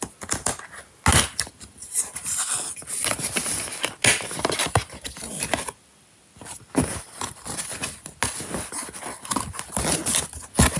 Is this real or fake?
real